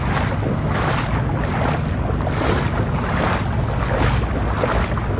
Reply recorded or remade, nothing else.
recorded